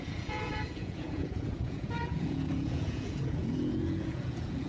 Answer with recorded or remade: remade